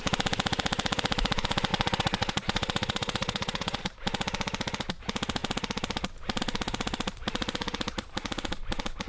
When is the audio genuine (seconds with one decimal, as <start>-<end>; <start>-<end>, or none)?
0.0-1.7; 3.8-9.1